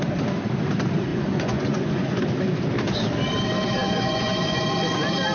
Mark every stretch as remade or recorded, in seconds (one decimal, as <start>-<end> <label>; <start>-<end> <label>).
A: 0.0-1.1 recorded; 1.1-2.2 remade; 2.2-3.8 recorded; 3.8-4.6 remade; 4.6-5.3 recorded